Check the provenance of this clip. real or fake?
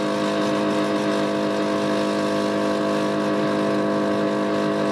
real